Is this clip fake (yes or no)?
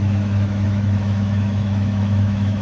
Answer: yes